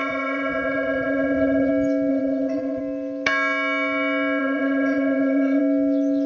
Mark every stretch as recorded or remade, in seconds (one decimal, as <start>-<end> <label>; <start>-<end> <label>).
0.0-1.7 remade; 1.7-2.1 recorded; 2.1-2.8 remade; 2.8-4.4 recorded; 4.4-5.6 remade; 5.6-6.3 recorded

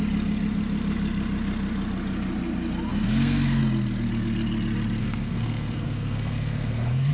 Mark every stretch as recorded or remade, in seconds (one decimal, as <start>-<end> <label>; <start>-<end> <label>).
0.0-2.9 recorded; 2.9-3.6 remade; 3.6-5.0 recorded; 5.0-7.1 remade

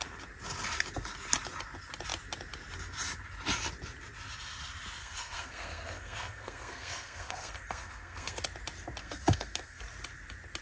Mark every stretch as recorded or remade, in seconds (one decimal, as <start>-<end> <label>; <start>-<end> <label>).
0.0-5.0 recorded; 5.0-8.4 remade; 8.4-9.0 recorded; 9.0-9.8 remade; 9.8-10.6 recorded

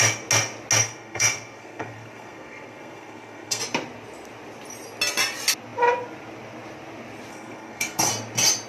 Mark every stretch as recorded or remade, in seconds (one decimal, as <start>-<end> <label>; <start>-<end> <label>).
0.0-0.8 recorded; 0.8-3.6 remade; 3.6-7.3 recorded; 7.3-8.1 remade; 8.1-8.7 recorded

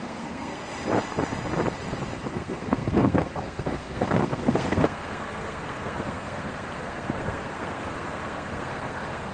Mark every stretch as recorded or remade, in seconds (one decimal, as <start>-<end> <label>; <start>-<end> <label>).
0.0-0.7 remade; 0.7-2.3 recorded; 2.3-9.3 remade